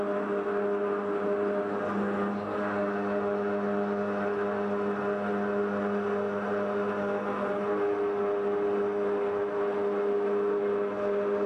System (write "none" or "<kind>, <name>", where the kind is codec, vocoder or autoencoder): none